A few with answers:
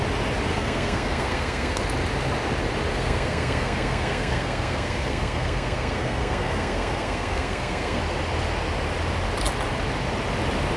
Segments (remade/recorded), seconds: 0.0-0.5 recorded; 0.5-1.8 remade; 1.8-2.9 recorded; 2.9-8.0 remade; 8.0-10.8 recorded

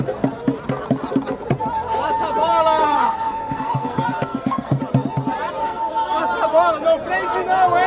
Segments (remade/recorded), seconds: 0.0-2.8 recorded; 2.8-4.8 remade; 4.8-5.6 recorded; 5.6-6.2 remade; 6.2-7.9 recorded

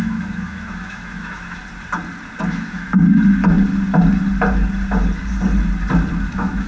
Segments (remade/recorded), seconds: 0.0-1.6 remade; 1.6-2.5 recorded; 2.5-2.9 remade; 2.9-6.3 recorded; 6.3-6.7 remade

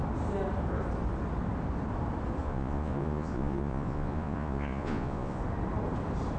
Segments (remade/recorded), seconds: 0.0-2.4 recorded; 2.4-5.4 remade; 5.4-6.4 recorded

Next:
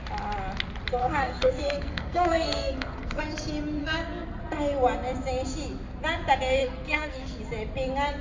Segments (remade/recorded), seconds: 0.0-1.0 recorded; 1.0-3.2 remade; 3.2-3.8 recorded; 3.8-4.4 remade; 4.4-6.6 recorded; 6.6-7.4 remade; 7.4-8.2 recorded